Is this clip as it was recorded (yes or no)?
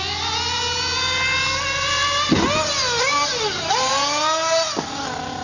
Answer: yes